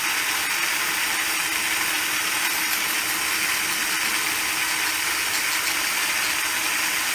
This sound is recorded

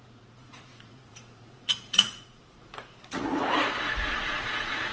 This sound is remade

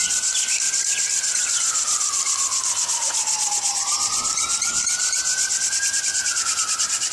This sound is recorded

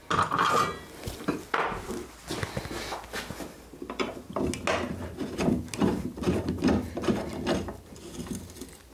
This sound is recorded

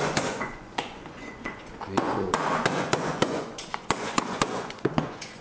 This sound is remade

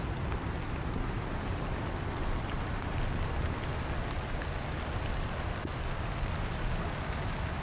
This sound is recorded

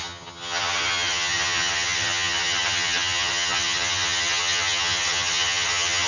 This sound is remade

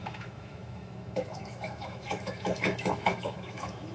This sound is remade